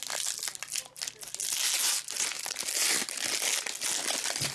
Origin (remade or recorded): recorded